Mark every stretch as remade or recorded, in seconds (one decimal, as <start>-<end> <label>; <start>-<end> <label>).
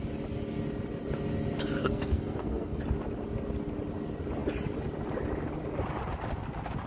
0.0-1.8 recorded; 1.8-2.8 remade; 2.8-6.9 recorded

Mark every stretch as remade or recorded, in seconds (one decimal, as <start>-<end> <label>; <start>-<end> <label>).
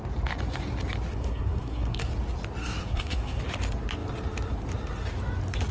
0.0-1.1 recorded; 1.1-2.1 remade; 2.1-2.6 recorded; 2.6-3.4 remade; 3.4-5.7 recorded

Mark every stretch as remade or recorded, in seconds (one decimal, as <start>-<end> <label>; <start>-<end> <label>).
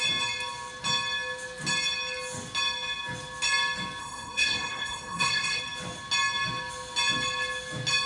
0.0-4.0 recorded; 4.0-5.6 remade; 5.6-8.1 recorded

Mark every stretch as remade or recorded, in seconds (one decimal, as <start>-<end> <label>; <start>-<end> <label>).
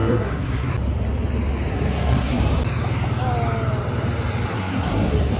0.0-0.7 remade; 0.7-1.7 recorded; 1.7-2.4 remade; 2.4-4.5 recorded; 4.5-5.4 remade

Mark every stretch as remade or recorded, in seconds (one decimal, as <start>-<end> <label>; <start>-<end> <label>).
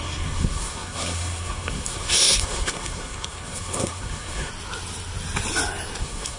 0.0-4.5 remade; 4.5-6.0 recorded; 6.0-6.4 remade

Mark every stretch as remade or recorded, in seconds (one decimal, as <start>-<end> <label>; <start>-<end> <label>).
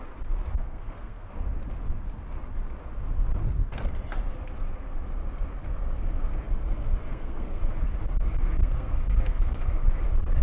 0.0-0.5 recorded; 0.5-1.3 remade; 1.3-7.0 recorded; 7.0-7.6 remade; 7.6-8.6 recorded; 8.6-9.7 remade; 9.7-10.4 recorded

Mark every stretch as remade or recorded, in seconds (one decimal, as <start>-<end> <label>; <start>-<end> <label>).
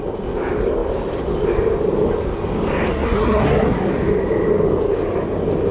0.0-2.9 recorded; 2.9-3.9 remade; 3.9-5.7 recorded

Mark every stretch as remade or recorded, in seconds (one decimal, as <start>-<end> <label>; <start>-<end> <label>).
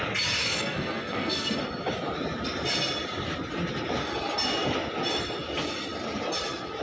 0.0-0.4 recorded; 0.4-1.6 remade; 1.6-6.8 recorded